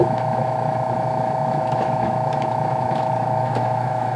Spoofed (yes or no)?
yes